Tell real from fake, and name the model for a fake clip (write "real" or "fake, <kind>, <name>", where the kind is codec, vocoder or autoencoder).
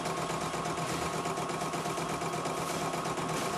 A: real